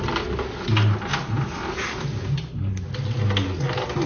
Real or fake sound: real